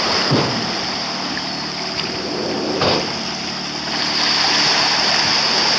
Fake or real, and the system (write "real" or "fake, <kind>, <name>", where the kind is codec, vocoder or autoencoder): real